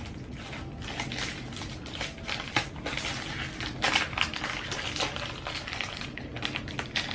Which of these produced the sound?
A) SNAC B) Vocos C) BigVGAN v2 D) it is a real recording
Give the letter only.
D